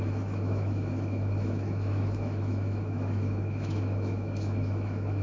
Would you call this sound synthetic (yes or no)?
yes